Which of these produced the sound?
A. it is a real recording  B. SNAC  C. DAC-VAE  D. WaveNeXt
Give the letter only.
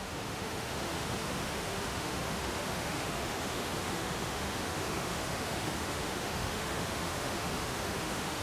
C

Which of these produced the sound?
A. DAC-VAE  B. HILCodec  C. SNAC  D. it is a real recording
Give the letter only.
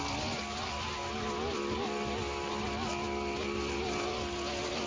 D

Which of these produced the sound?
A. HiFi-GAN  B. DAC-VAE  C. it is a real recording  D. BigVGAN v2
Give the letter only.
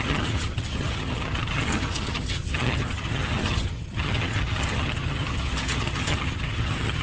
A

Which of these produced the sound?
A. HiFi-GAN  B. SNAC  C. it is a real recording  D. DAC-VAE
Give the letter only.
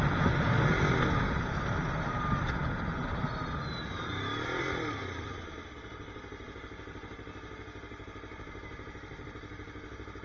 C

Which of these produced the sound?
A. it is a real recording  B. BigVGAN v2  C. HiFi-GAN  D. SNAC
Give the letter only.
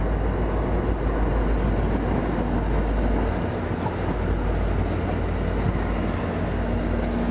A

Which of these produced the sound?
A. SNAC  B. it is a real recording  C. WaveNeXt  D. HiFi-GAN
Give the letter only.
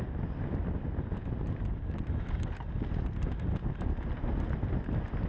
B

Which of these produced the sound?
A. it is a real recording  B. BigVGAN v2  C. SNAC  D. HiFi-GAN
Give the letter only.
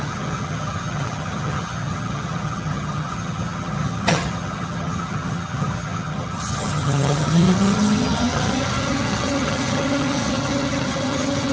D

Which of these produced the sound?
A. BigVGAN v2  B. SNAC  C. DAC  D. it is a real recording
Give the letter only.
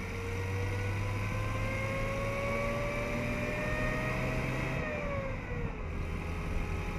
D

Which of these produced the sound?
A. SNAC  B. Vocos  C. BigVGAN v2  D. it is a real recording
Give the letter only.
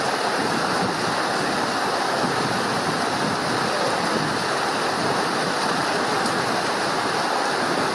D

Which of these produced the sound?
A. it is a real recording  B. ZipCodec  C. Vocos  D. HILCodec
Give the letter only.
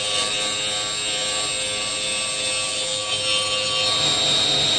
A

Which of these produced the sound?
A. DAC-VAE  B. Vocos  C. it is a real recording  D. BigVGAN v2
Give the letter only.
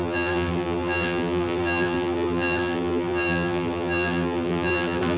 D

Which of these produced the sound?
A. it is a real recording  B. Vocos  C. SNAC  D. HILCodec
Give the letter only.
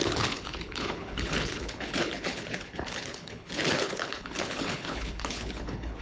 D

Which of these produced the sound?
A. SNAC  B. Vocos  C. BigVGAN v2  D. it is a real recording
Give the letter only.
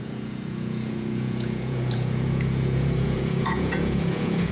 B